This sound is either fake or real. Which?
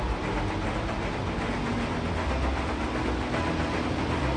fake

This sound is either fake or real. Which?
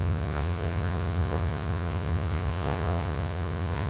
fake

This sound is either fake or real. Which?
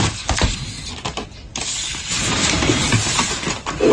real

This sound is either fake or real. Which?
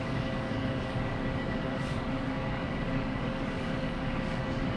fake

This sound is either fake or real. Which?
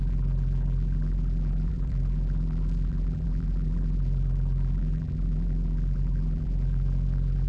fake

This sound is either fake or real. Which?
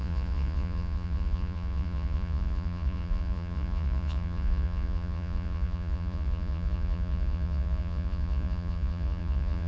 fake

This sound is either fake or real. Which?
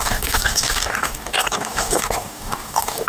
fake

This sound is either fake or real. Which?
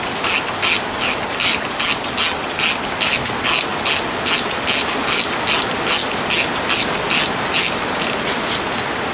real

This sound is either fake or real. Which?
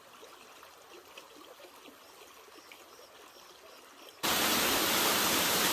real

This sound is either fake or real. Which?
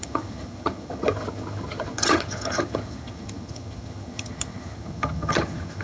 fake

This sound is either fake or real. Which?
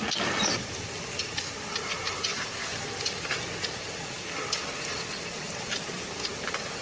real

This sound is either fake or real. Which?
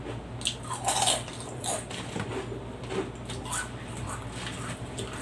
real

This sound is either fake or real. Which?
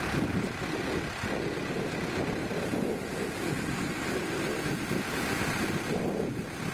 real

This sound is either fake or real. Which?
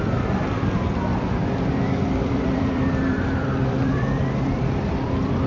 fake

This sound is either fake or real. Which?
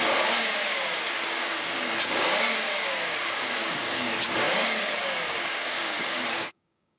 fake